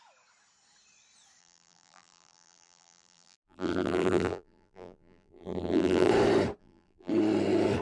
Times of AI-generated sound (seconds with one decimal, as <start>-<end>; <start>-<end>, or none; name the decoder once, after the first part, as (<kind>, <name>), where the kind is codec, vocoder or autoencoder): 1.4-6.1 (vocoder, BigVGAN v2); 6.6-7.1